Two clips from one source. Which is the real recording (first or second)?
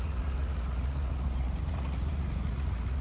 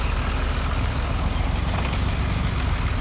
second